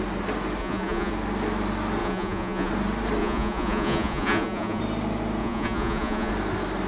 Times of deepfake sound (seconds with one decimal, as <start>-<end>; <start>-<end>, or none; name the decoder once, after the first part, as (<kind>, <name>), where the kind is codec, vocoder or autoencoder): 0.6-1.1 (vocoder, Vocos); 2.0-2.7; 3.2-4.8; 5.4-6.3